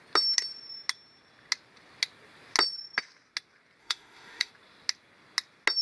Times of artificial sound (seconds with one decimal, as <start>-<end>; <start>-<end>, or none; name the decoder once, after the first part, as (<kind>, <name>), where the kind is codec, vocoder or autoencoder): 3.8-4.5 (autoencoder, DAC-VAE)